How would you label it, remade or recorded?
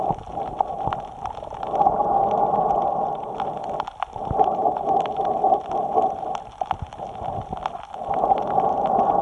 recorded